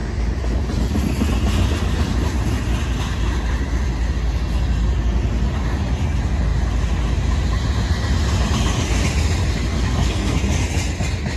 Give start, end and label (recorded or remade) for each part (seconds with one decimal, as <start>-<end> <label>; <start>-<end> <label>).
0.0-9.7 recorded; 9.7-10.4 remade; 10.4-11.4 recorded